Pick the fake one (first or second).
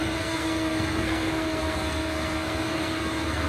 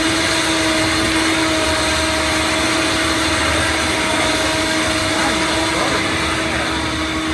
first